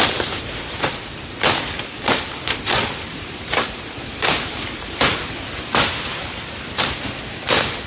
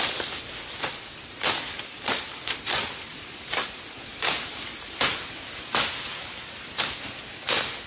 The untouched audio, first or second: second